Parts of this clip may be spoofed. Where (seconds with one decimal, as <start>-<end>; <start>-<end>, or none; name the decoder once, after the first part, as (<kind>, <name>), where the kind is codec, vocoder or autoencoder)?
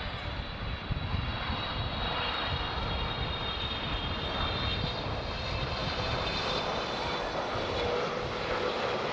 5.8-7.0 (vocoder, BigVGAN v2)